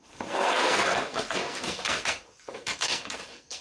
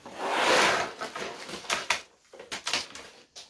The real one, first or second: second